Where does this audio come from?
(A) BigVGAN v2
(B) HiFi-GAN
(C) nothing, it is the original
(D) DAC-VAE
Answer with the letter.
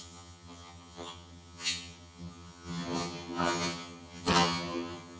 B